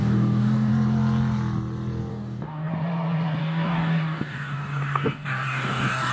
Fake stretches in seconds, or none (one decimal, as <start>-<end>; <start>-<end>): 0.0-0.7; 2.1-2.7; 3.4-6.1